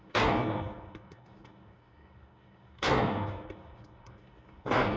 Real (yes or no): no